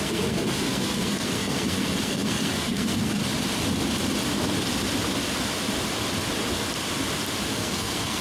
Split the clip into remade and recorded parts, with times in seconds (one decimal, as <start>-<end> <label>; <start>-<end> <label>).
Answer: 0.0-3.2 remade; 3.2-7.5 recorded; 7.5-8.2 remade